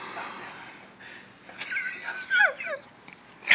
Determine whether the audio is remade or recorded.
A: recorded